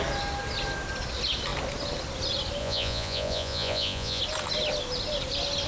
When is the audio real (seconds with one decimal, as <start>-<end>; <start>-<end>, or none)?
0.0-2.6; 4.2-5.7